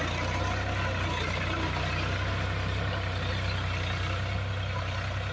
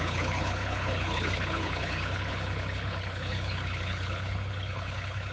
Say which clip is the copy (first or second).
second